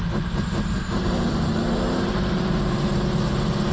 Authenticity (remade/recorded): remade